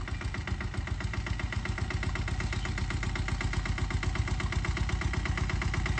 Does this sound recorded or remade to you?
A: recorded